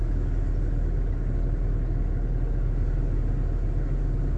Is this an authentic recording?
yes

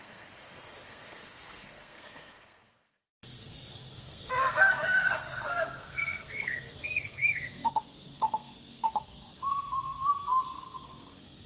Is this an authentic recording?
no